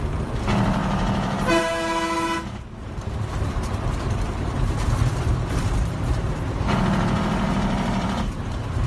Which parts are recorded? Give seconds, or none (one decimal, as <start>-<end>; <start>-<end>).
none

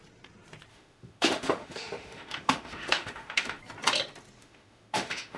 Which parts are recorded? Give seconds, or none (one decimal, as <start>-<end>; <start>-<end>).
0.0-0.7; 3.6-4.4